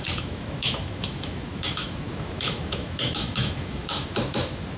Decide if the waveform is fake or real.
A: fake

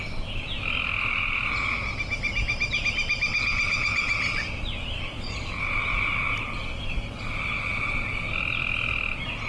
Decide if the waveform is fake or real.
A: real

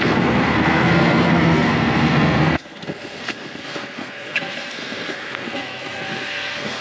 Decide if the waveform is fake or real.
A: fake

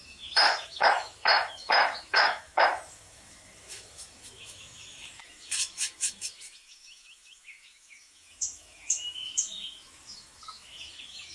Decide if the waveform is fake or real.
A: fake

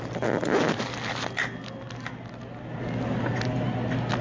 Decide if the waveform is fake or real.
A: real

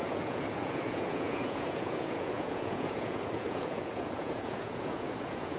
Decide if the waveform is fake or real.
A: fake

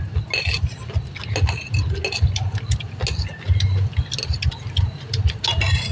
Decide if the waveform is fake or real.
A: real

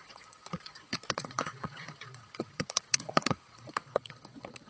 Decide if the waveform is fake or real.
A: fake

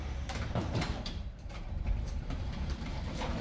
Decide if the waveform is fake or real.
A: fake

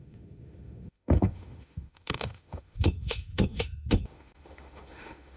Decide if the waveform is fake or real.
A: fake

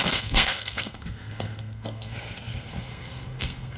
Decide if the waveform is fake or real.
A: fake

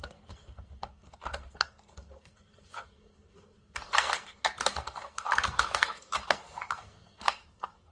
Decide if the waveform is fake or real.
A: fake